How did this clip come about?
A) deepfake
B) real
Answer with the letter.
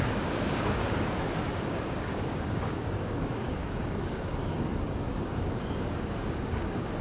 A